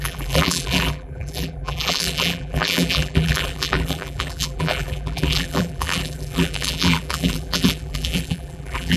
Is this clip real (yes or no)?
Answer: no